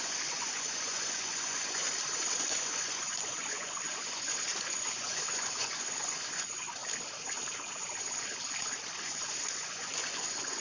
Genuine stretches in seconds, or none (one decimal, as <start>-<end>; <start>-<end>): 1.8-2.4; 6.8-9.0